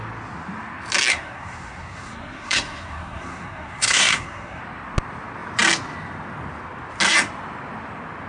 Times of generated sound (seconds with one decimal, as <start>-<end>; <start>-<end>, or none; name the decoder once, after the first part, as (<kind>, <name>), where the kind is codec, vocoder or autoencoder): 1.1-4.6 (codec, SNAC)